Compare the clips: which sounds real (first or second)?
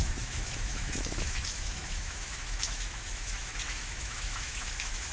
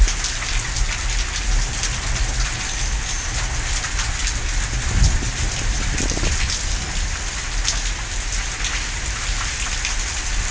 second